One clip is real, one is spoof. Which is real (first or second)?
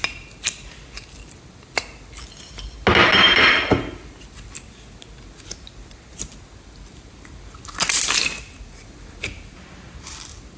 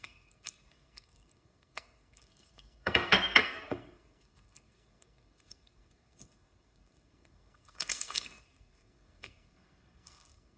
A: first